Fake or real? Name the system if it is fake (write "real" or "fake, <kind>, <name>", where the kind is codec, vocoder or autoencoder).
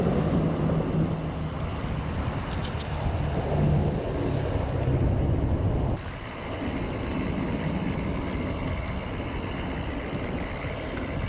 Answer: real